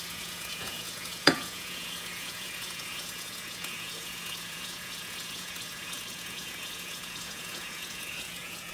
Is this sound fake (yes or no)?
yes